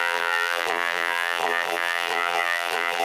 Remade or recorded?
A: remade